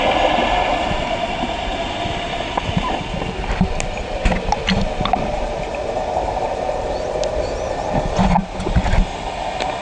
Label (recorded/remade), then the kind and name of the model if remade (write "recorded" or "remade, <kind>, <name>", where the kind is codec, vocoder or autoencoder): recorded